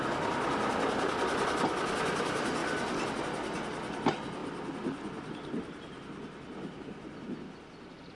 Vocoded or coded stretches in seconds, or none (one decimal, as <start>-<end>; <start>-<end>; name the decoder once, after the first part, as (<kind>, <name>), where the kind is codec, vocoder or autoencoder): none